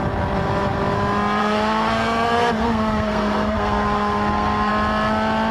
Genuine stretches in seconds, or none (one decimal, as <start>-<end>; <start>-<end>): 0.0-1.4; 4.7-5.5